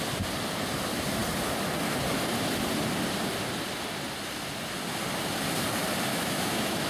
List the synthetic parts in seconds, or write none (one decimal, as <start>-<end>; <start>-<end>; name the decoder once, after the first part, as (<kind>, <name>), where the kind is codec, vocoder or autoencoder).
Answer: 6.1-6.9 (autoencoder, DAC-VAE)